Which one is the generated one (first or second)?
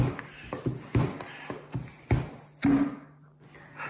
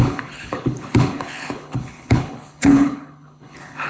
second